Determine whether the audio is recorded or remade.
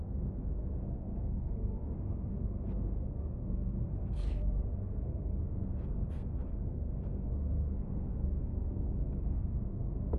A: remade